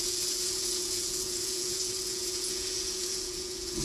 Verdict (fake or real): fake